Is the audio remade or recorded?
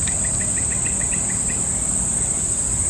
recorded